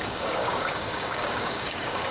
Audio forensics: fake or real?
fake